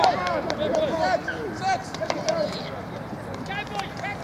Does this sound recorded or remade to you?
remade